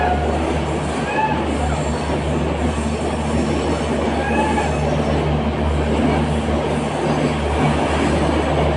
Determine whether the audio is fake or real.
real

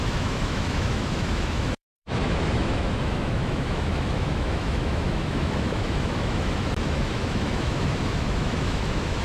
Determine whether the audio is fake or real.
fake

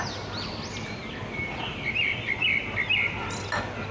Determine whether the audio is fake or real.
real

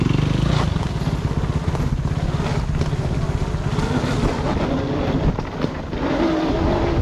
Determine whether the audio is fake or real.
real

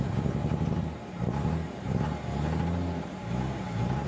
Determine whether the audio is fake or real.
real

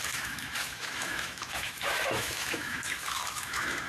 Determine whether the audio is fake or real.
fake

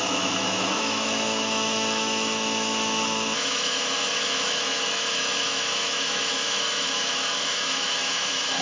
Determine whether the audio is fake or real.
fake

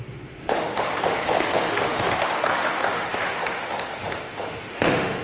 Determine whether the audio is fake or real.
fake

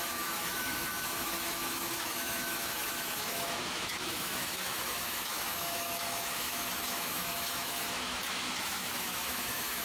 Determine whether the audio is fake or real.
fake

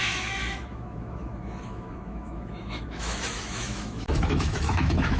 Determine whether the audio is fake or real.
fake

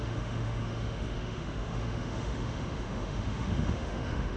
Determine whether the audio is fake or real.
fake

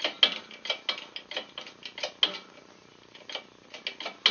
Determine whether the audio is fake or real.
real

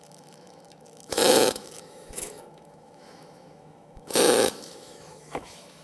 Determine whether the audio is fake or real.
fake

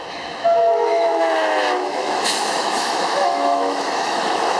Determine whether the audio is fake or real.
fake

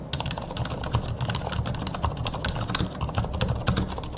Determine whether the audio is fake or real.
real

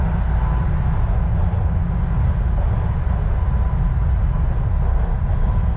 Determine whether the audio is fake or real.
real